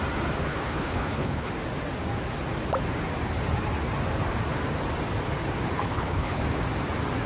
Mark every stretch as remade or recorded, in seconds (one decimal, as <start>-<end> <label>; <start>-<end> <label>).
0.0-0.5 recorded; 0.5-1.5 remade; 1.5-5.8 recorded; 5.8-6.4 remade; 6.4-7.3 recorded